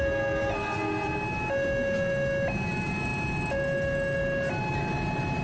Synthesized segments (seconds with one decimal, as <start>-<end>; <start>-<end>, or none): none